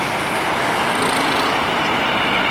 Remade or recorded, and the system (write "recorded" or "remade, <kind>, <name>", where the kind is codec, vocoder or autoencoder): recorded